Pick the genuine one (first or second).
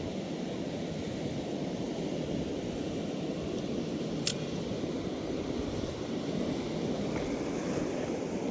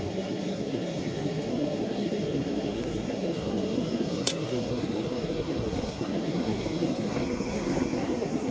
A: first